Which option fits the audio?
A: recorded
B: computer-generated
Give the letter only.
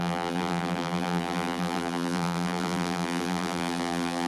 B